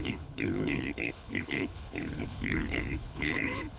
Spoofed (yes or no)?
yes